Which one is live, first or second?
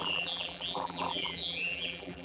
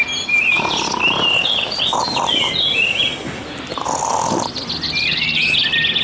second